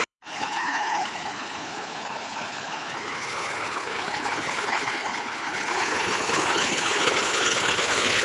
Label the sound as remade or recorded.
remade